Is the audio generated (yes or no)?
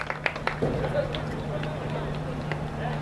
no